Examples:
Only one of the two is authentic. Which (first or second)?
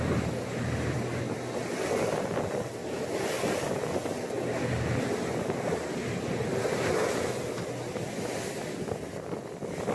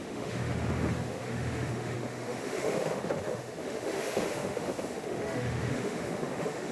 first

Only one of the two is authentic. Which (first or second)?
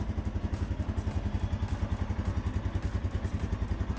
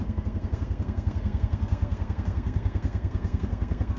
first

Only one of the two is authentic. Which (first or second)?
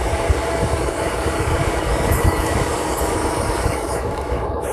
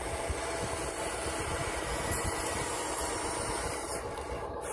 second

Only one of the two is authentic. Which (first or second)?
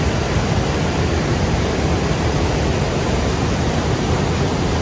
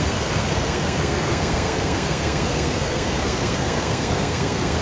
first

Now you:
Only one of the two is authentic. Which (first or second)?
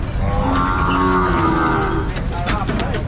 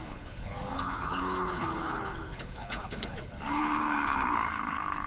first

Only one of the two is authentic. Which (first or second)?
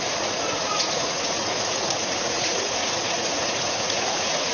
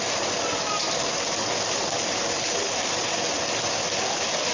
second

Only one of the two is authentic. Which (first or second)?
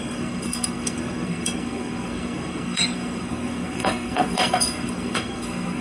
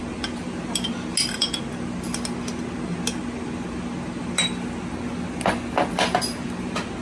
second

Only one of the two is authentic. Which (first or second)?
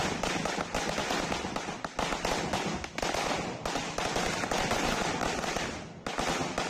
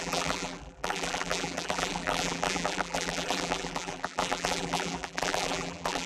first